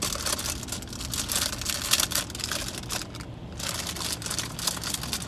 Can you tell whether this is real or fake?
real